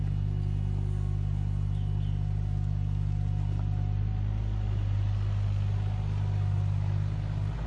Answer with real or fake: real